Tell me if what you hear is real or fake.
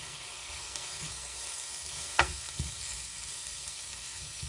fake